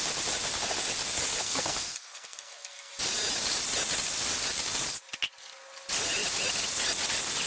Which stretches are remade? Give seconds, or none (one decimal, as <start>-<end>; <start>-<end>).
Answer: 1.3-2.9